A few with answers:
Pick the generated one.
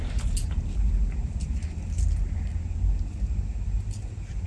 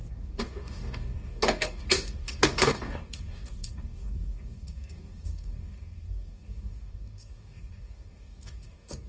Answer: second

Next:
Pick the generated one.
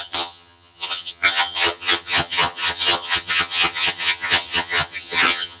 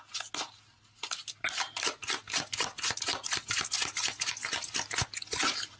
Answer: first